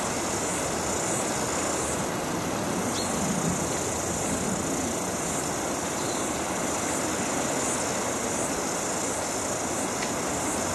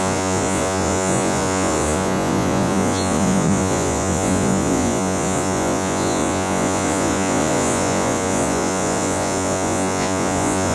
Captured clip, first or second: first